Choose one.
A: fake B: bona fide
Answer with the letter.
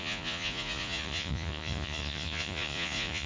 A